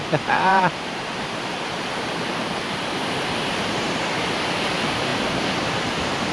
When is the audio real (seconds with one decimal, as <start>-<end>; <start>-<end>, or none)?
0.0-0.5; 4.3-5.1